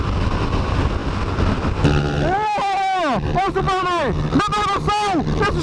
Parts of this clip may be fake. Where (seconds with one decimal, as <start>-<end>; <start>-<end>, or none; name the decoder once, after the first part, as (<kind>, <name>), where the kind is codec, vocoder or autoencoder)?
none